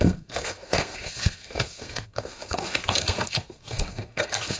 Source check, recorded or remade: remade